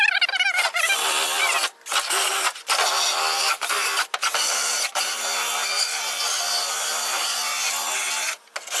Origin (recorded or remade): recorded